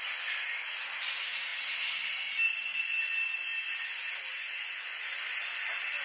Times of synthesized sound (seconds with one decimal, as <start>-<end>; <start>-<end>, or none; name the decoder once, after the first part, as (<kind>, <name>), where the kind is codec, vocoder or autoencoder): 4.3-5.3 (vocoder, Vocos)